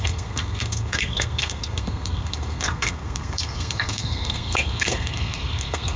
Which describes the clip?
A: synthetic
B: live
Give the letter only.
A